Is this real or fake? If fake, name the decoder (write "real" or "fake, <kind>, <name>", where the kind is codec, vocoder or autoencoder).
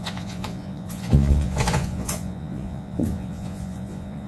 fake, vocoder, Vocos